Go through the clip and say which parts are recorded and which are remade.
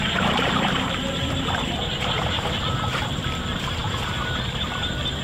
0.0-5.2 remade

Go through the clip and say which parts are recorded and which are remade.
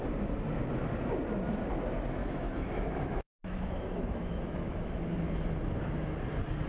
0.0-2.2 recorded; 2.2-5.0 remade; 5.0-6.7 recorded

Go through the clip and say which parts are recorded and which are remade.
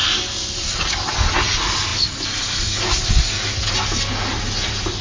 0.0-5.0 recorded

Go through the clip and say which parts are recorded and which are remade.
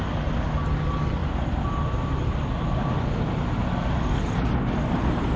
0.0-5.4 recorded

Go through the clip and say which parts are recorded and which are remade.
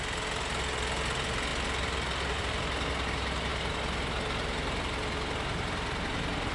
0.0-6.5 recorded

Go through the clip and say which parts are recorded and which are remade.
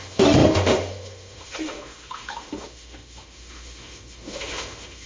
0.0-5.1 remade